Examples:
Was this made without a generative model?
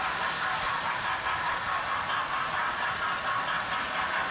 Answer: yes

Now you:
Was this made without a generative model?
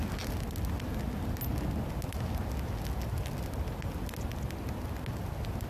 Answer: yes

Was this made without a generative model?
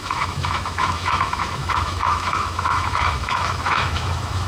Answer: no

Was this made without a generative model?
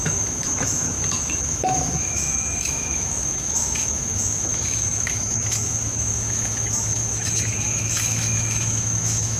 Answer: no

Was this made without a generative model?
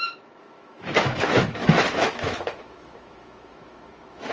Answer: no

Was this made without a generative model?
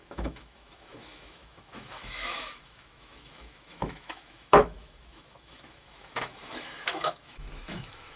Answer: no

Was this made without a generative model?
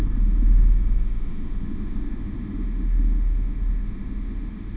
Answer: no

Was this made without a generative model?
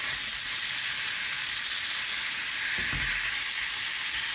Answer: yes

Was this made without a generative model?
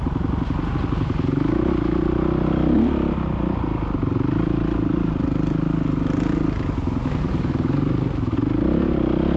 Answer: yes